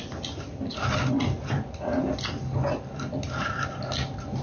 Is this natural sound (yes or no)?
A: yes